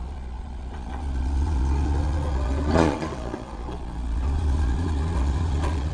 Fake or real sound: fake